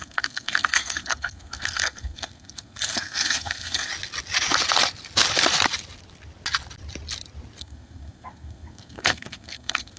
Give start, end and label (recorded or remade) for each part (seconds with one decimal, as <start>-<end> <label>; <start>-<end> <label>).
0.0-3.9 remade; 3.9-7.6 recorded; 7.6-10.0 remade